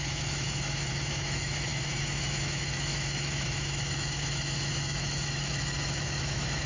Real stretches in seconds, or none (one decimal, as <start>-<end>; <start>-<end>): none